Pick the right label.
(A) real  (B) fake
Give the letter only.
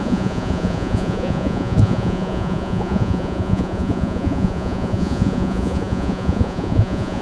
B